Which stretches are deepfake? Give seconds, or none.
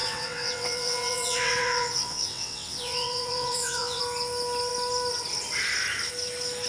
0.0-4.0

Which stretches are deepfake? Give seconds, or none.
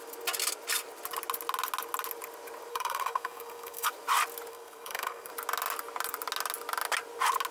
2.7-3.9; 4.5-5.3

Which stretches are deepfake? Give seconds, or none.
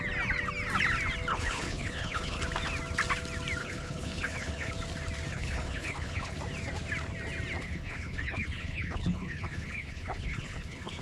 1.3-2.4; 3.6-4.7; 5.3-6.4; 7.6-11.0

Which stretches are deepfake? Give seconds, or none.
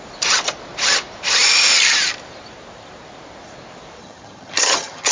4.0-5.1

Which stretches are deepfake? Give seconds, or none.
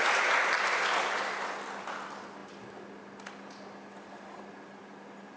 none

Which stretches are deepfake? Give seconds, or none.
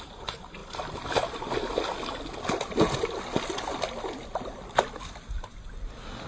none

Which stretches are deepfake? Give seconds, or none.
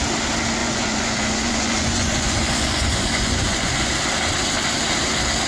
0.6-3.9